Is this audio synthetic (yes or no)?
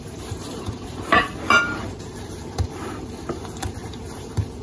yes